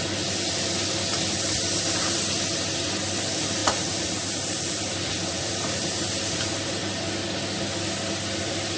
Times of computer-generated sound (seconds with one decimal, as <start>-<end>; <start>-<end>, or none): 3.6-6.6